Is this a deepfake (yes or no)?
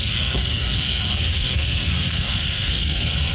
yes